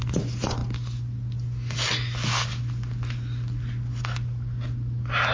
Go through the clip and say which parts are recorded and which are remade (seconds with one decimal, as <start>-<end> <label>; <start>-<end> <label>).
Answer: 0.0-5.3 recorded